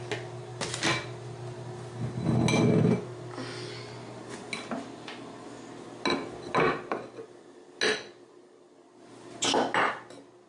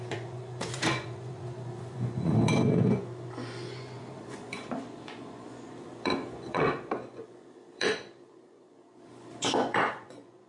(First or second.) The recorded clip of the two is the first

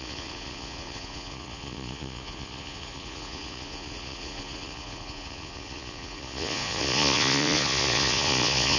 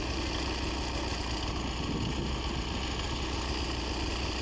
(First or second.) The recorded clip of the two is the second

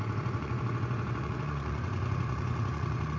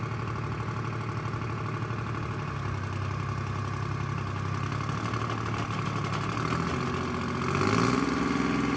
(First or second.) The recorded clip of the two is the second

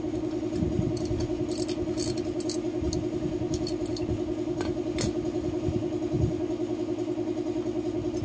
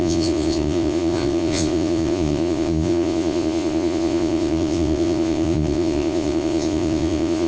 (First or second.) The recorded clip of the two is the first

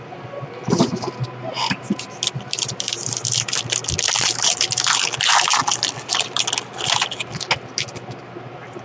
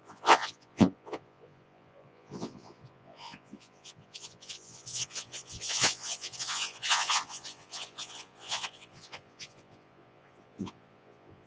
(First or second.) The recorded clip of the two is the first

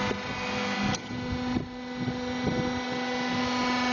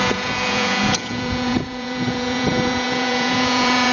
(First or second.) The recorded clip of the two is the first